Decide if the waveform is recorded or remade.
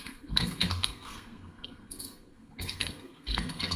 remade